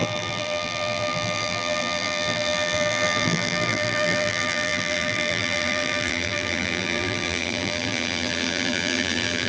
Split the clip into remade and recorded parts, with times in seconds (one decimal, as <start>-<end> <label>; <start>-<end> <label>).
0.0-9.5 remade